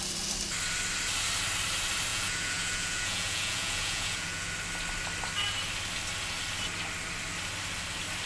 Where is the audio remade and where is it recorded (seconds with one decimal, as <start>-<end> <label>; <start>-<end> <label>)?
0.0-2.1 recorded; 2.1-4.5 remade; 4.5-8.3 recorded